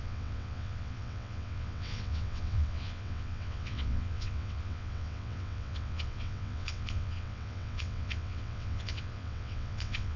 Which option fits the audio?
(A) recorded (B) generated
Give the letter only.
B